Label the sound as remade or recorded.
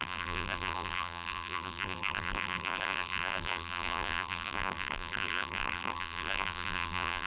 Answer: remade